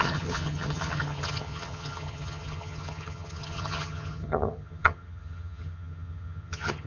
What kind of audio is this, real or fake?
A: fake